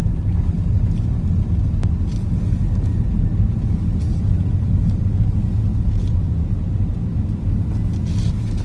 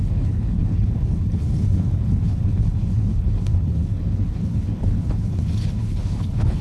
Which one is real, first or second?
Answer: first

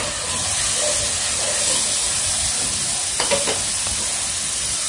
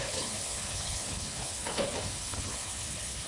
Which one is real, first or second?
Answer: first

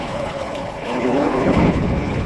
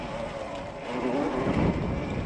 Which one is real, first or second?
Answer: second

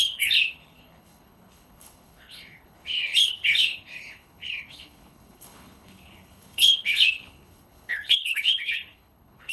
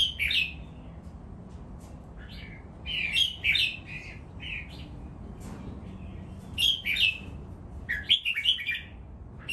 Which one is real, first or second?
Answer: second